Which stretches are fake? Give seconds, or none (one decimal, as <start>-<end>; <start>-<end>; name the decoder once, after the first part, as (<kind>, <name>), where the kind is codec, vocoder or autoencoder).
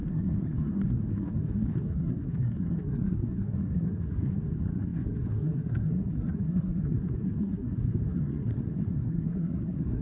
0.0-10.0 (codec, SNAC)